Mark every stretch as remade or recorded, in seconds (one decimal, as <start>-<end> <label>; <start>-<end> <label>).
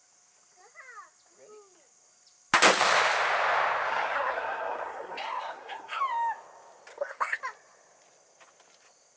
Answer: 0.0-3.9 recorded; 3.9-6.0 remade; 6.0-6.9 recorded; 6.9-7.4 remade; 7.4-9.2 recorded